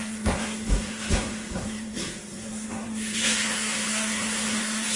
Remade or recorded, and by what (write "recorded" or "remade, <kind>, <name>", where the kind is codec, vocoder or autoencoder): remade, codec, SNAC